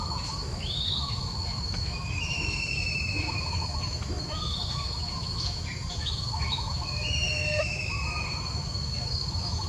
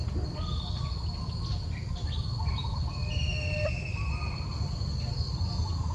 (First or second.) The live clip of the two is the second